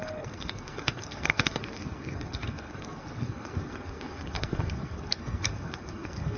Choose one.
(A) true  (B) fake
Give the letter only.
B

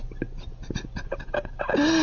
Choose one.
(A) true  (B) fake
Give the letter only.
A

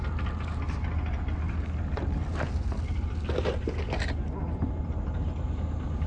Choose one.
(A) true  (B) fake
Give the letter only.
A